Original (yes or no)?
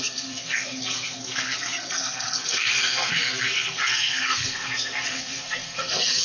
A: no